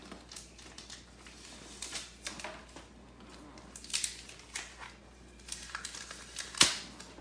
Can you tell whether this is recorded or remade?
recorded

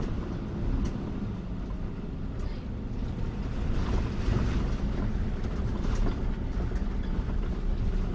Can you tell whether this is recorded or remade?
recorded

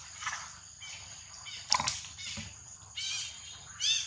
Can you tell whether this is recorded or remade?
recorded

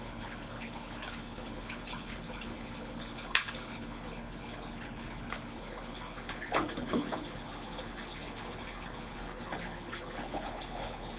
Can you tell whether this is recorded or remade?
remade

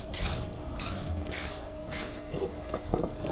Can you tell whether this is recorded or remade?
remade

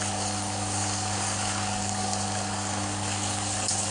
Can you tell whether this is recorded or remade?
remade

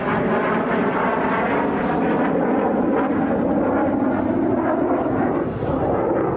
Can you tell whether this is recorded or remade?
recorded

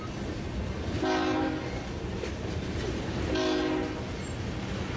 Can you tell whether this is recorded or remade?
recorded